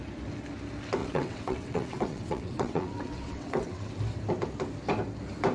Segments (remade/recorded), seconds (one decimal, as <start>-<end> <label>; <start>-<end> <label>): 0.0-1.0 recorded; 1.0-3.9 remade; 3.9-5.5 recorded